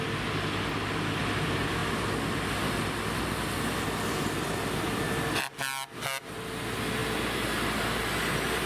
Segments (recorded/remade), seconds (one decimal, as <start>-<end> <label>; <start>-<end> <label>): 0.0-8.7 recorded